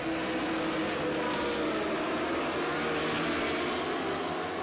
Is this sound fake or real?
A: real